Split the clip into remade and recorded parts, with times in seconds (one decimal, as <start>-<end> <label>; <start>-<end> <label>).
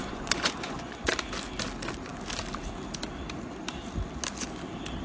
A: 0.0-1.1 remade; 1.1-5.0 recorded